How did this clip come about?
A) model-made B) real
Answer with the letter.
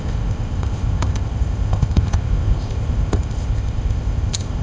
A